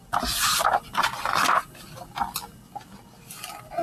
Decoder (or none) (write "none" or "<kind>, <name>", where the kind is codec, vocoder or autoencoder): none